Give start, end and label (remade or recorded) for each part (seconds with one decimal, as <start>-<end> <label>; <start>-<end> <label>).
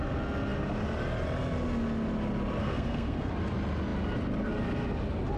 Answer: 0.0-2.6 recorded; 2.6-3.3 remade; 3.3-5.4 recorded